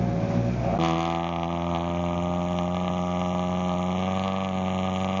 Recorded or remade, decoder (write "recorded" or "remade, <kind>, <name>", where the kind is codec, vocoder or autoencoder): recorded